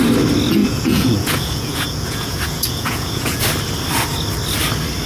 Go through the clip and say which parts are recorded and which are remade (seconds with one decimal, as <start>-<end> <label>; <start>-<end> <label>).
0.0-0.6 recorded; 0.6-3.4 remade; 3.4-5.1 recorded